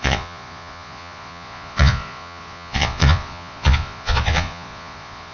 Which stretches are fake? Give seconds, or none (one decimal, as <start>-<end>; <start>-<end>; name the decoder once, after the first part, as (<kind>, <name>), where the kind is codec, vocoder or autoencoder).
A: 0.0-5.3 (vocoder, Vocos)